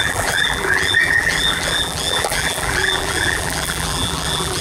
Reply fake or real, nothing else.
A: fake